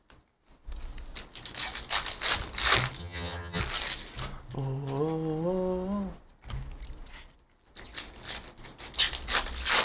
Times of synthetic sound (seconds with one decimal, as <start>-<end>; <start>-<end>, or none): 3.0-3.6